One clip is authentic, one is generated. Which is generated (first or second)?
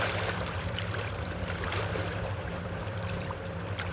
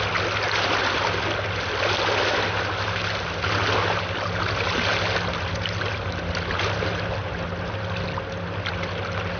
first